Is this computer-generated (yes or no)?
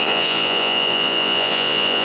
yes